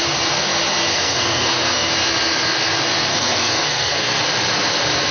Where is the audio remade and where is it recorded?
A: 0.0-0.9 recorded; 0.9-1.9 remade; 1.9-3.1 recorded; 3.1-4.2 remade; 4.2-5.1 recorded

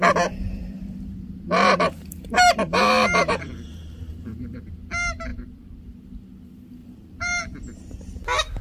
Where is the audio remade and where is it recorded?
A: 0.0-0.4 recorded; 0.4-4.7 remade; 4.7-5.3 recorded; 5.3-5.8 remade; 5.8-6.8 recorded; 6.8-7.4 remade; 7.4-8.6 recorded

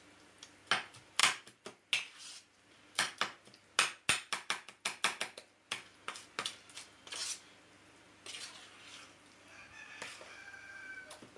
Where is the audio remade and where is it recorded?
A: 0.0-11.4 recorded

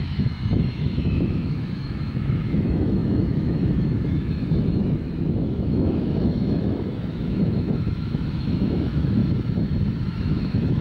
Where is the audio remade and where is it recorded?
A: 0.0-9.2 remade; 9.2-10.0 recorded; 10.0-10.8 remade

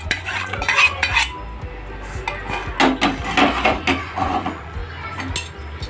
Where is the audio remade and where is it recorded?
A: 0.0-1.1 remade; 1.1-4.0 recorded; 4.0-4.8 remade; 4.8-5.9 recorded

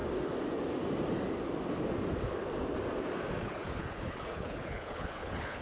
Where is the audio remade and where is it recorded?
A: 0.0-3.4 recorded; 3.4-5.6 remade

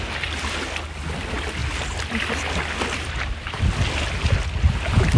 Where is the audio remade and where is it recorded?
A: 0.0-5.2 recorded

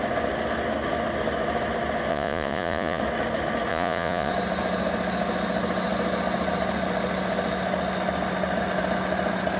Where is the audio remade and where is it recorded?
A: 0.0-2.1 recorded; 2.1-3.0 remade; 3.0-3.7 recorded; 3.7-4.3 remade; 4.3-9.6 recorded